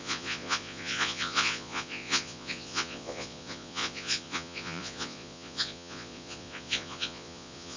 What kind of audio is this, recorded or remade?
remade